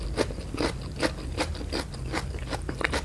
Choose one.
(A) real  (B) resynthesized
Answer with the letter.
A